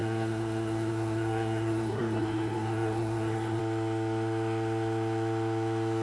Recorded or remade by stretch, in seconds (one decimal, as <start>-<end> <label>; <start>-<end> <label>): 0.0-3.6 remade; 3.6-6.0 recorded